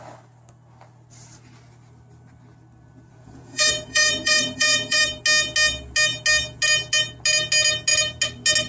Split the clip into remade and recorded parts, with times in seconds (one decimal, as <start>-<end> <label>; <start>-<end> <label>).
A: 0.0-3.1 recorded; 3.1-5.0 remade; 5.0-8.7 recorded